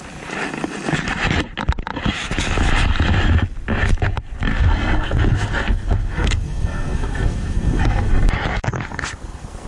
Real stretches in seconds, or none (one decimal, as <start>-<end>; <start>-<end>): 0.0-4.5; 8.1-8.5